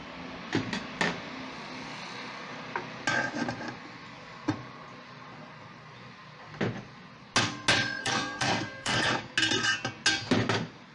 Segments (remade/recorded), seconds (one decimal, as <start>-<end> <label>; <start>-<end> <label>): 0.0-8.0 recorded; 8.0-9.2 remade; 9.2-10.9 recorded